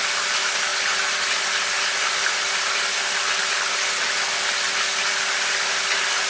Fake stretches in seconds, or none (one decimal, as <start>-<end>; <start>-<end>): none